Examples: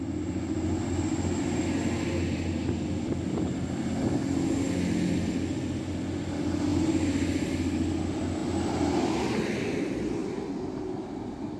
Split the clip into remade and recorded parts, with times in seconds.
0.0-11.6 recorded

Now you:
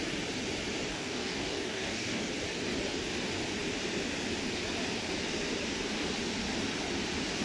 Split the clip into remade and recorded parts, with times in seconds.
0.0-0.9 recorded; 0.9-2.2 remade; 2.2-7.4 recorded

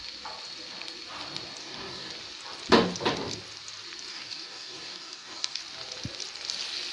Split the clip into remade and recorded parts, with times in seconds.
0.0-1.6 recorded; 1.6-2.1 remade; 2.1-4.1 recorded; 4.1-5.6 remade; 5.6-6.9 recorded